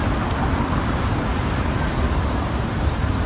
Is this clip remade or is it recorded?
recorded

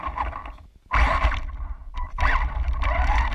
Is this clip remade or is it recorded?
recorded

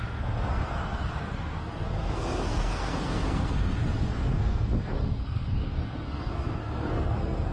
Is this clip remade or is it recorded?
remade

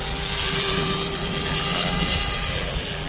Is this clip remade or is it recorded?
remade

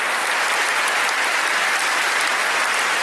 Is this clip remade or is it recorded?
recorded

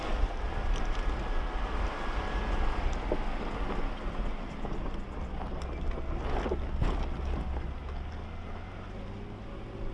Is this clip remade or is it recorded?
recorded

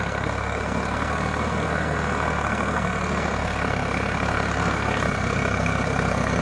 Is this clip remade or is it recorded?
remade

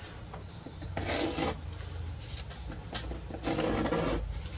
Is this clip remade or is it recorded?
recorded